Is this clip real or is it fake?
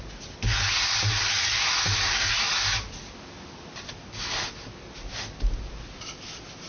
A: real